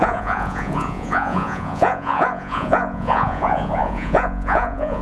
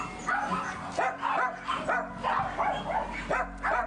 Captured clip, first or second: second